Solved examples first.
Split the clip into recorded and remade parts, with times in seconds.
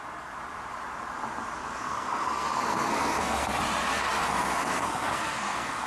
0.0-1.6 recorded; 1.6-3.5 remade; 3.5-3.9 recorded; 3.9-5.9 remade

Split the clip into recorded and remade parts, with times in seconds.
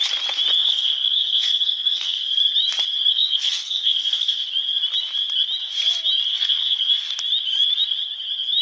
0.0-0.6 recorded; 0.6-2.3 remade; 2.3-3.1 recorded; 3.1-4.4 remade; 4.4-6.3 recorded; 6.3-7.1 remade; 7.1-8.6 recorded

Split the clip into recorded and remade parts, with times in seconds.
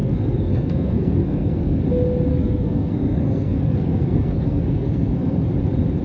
0.0-1.8 remade; 1.8-2.3 recorded; 2.3-5.5 remade; 5.5-6.0 recorded